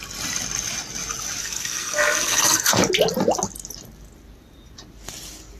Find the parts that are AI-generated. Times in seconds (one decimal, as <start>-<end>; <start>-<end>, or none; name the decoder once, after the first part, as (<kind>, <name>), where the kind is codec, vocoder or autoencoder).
1.4-2.8 (codec, SNAC)